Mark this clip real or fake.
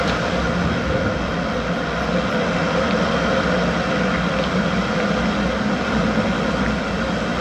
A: real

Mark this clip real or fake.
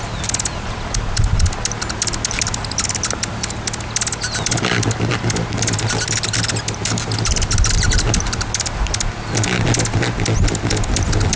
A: real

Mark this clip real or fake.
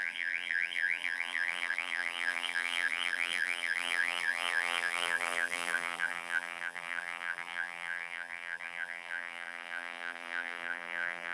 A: fake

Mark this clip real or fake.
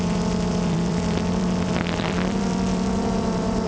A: fake